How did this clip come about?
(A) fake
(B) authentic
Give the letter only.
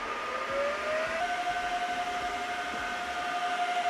B